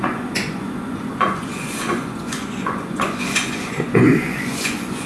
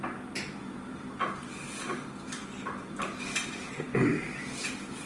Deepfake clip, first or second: first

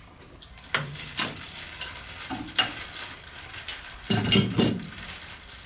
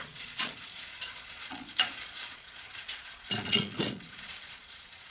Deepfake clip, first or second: second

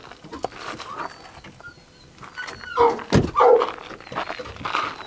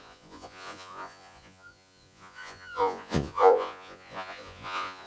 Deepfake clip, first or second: second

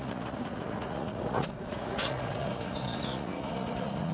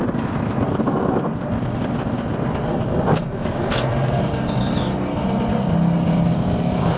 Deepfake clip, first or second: first